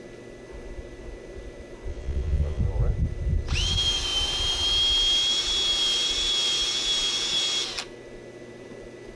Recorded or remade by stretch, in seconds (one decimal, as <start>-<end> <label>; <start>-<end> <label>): 0.0-1.9 recorded; 1.9-2.6 remade; 2.6-9.2 recorded